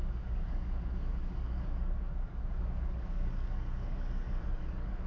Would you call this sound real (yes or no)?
no